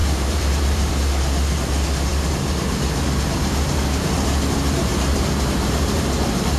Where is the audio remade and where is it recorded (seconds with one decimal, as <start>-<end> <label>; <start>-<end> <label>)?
0.0-0.9 remade; 0.9-4.9 recorded; 4.9-6.6 remade